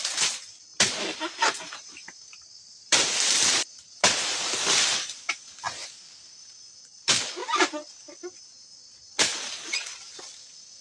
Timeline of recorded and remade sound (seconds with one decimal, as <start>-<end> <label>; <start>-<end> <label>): 0.0-0.7 recorded; 0.7-4.7 remade; 4.7-9.3 recorded; 9.3-10.2 remade; 10.2-10.8 recorded